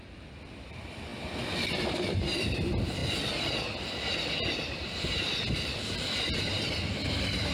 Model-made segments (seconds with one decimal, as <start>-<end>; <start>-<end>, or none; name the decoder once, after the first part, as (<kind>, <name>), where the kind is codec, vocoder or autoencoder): 0.0-3.0 (vocoder, BigVGAN v2); 3.8-7.5